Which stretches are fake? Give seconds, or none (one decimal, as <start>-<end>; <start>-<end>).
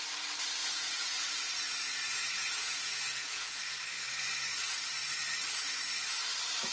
0.6-1.4; 2.4-3.6